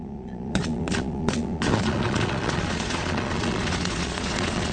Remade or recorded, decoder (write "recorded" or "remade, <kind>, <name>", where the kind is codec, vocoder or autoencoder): remade, vocoder, Vocos